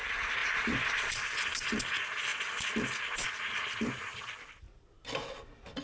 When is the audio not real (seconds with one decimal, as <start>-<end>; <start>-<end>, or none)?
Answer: 0.4-1.8